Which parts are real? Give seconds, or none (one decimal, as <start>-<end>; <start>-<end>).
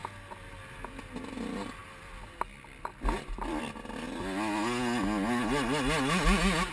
0.0-6.7